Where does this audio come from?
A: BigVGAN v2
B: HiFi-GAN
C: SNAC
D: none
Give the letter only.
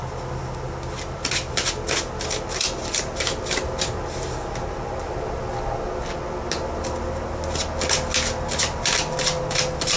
D